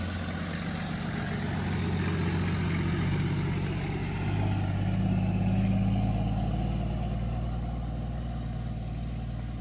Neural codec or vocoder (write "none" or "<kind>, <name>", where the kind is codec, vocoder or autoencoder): none